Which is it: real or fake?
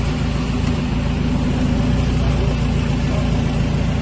real